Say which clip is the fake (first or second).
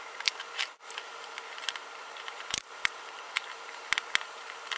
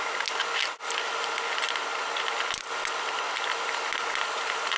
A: first